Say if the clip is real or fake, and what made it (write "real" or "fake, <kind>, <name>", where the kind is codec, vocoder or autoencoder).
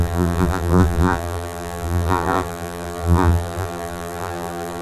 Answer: fake, vocoder, BigVGAN v2